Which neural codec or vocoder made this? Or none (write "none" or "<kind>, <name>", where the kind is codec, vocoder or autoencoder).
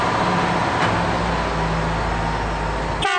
none